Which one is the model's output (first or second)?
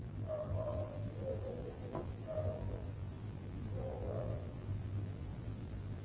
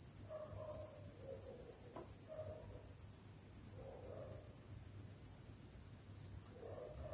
first